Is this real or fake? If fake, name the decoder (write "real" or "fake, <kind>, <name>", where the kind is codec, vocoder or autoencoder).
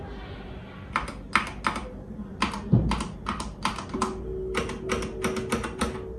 real